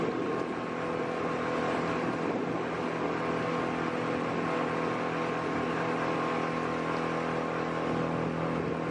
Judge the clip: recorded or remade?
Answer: recorded